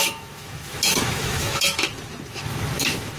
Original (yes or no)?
no